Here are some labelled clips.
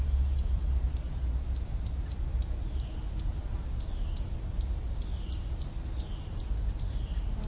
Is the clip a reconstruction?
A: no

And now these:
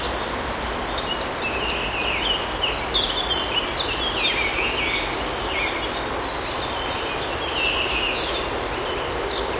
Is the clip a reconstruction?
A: no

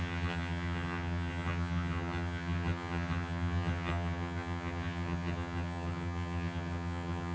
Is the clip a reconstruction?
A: yes